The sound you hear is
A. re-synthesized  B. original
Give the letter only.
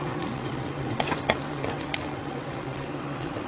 A